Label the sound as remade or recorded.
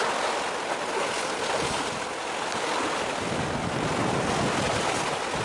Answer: recorded